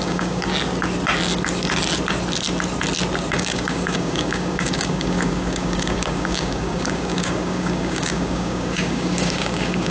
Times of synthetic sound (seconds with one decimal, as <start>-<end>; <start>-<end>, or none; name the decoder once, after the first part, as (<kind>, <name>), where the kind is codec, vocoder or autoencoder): 0.0-0.5 (codec, DAC); 3.3-9.9